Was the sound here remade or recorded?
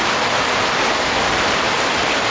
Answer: recorded